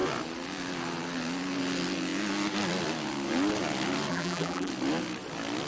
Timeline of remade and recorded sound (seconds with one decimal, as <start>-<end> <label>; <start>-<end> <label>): 0.0-4.1 recorded; 4.1-4.7 remade; 4.7-5.7 recorded